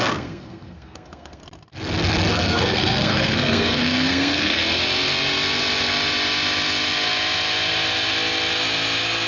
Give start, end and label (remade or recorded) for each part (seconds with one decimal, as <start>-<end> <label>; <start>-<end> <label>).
0.0-1.4 remade; 1.4-2.3 recorded; 2.3-4.6 remade; 4.6-9.3 recorded